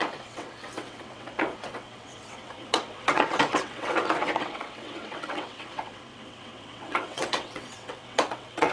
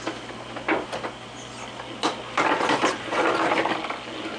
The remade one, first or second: first